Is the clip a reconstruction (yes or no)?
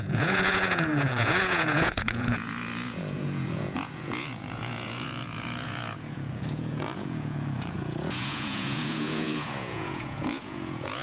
yes